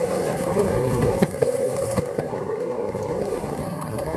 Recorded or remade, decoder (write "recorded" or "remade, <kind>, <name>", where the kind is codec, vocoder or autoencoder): remade, codec, SNAC